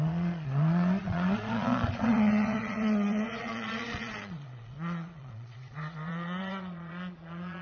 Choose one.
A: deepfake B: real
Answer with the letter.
A